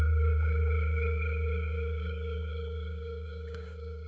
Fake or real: fake